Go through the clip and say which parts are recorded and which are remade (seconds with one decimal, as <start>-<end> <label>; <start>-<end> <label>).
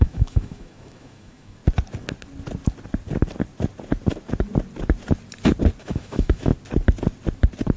0.0-1.6 remade; 1.6-5.8 recorded; 5.8-6.5 remade; 6.5-7.8 recorded